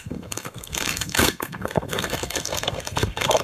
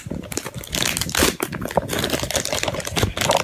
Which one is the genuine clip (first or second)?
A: second